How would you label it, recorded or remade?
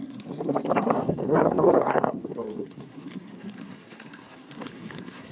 remade